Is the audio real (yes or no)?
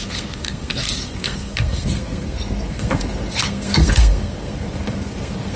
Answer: no